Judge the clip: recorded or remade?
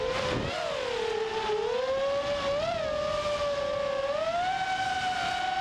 recorded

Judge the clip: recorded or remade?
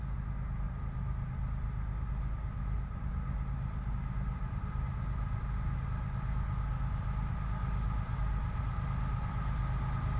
recorded